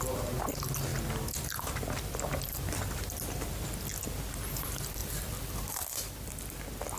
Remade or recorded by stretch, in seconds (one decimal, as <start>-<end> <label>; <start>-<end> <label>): 0.0-5.0 recorded; 5.0-6.3 remade; 6.3-7.0 recorded